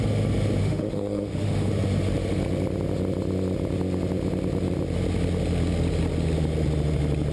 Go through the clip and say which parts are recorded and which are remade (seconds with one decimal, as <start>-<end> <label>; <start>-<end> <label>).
0.0-0.6 recorded; 0.6-1.7 remade; 1.7-7.3 recorded